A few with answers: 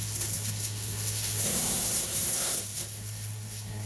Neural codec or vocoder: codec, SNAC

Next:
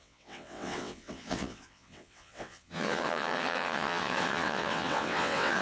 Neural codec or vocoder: vocoder, WaveNeXt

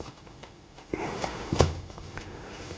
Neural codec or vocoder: autoencoder, DAC-VAE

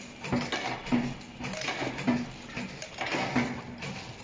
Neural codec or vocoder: none